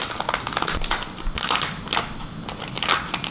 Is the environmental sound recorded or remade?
recorded